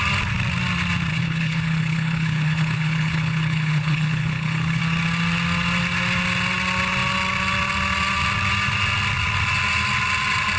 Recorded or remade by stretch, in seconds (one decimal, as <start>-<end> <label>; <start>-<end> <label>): 0.0-1.1 recorded; 1.1-4.8 remade; 4.8-10.6 recorded